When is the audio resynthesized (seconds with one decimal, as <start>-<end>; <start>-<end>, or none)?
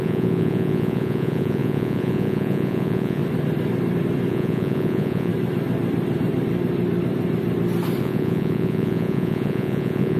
0.0-3.2; 4.3-5.3; 8.0-10.2